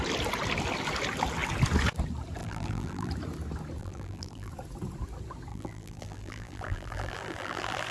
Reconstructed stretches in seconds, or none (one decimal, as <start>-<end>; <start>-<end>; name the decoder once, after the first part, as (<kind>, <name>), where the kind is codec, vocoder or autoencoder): 2.4-3.1 (vocoder, BigVGAN v2); 3.8-4.5; 5.5-7.9